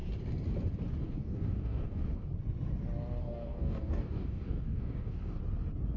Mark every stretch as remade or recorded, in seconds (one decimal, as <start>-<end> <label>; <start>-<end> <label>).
0.0-1.0 recorded; 1.0-2.3 remade; 2.3-3.2 recorded; 3.2-5.4 remade; 5.4-6.0 recorded